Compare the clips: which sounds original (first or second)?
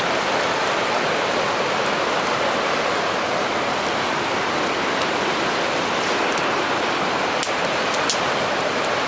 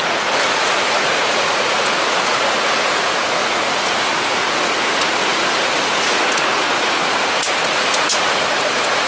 first